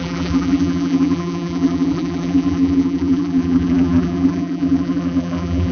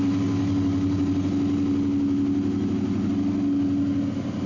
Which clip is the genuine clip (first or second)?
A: second